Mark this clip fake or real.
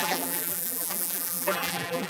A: fake